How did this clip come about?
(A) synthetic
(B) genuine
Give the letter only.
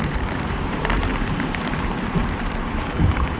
A